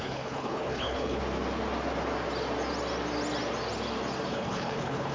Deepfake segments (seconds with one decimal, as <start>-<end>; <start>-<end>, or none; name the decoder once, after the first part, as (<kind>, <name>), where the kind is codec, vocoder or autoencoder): 0.0-1.2 (codec, HILCodec); 4.3-5.1